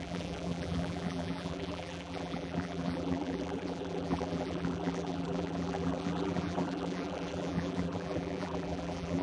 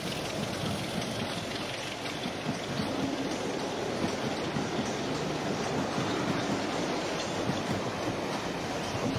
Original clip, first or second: second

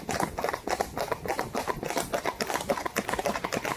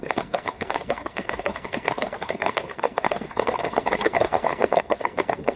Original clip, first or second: first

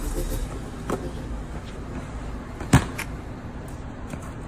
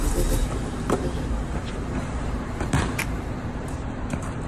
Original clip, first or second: first